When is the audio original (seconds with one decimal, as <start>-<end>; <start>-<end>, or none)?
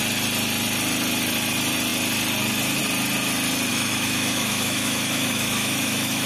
0.0-3.7